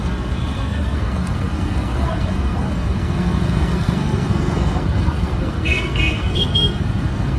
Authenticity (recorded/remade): remade